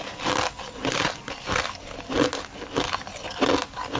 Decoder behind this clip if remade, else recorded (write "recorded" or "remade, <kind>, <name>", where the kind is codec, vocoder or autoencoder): recorded